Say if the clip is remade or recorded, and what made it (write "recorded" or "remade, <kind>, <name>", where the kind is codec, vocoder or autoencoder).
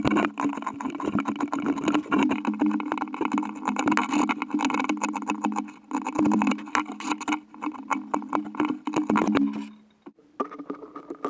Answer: recorded